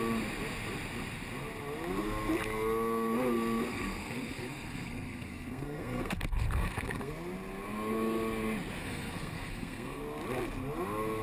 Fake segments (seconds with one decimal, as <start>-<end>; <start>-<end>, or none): 3.7-7.1; 8.8-10.0

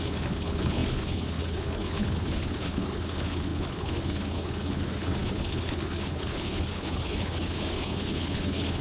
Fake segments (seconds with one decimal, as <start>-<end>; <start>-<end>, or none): 0.0-8.8

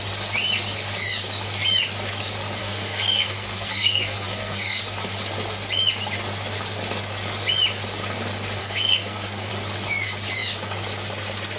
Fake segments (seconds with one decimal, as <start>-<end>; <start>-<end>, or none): 2.6-4.8; 8.6-9.5

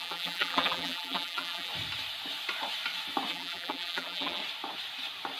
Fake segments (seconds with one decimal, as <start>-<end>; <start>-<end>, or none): 0.0-1.7; 3.3-4.4